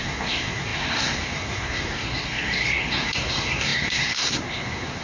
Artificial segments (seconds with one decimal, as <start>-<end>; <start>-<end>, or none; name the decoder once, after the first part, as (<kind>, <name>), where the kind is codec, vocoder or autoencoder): 0.0-5.0 (codec, SNAC)